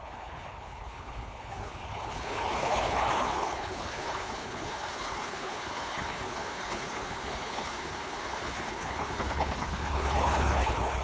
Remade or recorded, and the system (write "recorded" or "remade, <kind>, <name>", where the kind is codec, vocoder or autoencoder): remade, codec, HILCodec